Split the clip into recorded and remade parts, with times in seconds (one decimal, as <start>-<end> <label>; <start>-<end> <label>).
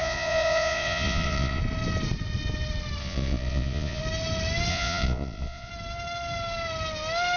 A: 0.0-1.6 remade; 1.6-3.0 recorded; 3.0-4.0 remade; 4.0-4.7 recorded; 4.7-5.7 remade; 5.7-7.4 recorded